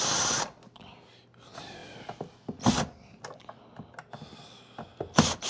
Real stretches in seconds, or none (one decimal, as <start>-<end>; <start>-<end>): 0.0-5.5

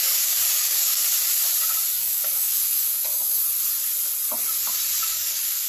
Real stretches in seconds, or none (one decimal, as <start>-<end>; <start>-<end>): 1.0-1.9; 3.4-5.0